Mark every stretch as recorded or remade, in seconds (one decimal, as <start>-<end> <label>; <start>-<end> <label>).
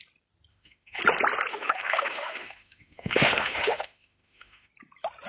0.0-0.5 recorded; 0.5-1.0 remade; 1.0-1.5 recorded; 1.5-4.7 remade; 4.7-5.3 recorded